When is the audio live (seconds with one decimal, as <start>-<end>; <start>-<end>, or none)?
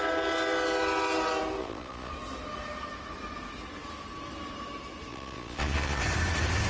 0.0-1.6; 2.1-5.1; 6.0-6.7